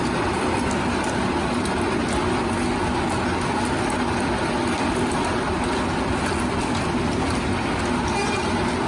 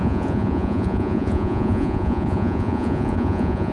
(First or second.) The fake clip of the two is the second